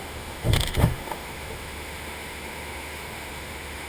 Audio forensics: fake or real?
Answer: fake